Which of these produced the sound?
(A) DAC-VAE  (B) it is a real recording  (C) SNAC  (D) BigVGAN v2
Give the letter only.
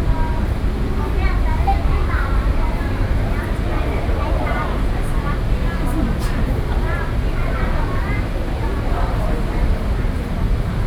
B